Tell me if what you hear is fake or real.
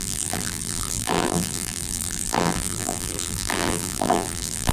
fake